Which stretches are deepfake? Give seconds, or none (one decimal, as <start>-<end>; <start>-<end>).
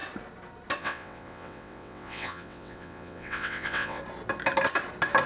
0.8-4.0